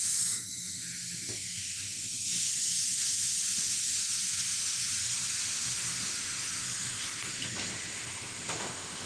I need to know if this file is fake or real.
fake